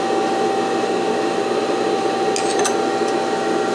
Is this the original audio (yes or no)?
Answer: yes